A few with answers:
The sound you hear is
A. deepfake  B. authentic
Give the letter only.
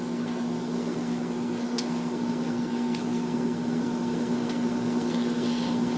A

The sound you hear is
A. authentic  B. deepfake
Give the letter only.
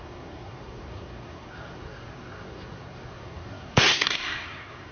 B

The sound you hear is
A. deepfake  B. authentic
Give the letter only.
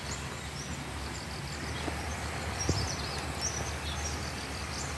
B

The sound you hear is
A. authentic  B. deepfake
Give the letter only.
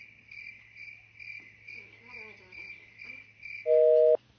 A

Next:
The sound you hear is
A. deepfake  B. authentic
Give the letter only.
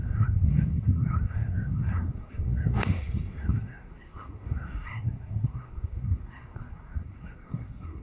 A